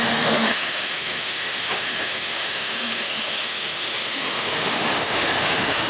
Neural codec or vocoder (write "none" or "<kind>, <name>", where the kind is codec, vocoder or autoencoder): autoencoder, DAC-VAE